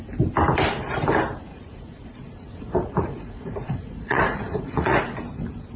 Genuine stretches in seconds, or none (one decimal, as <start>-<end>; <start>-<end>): 0.0-1.5; 5.0-5.8